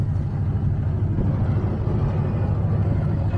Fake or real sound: real